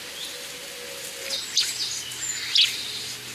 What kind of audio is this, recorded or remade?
recorded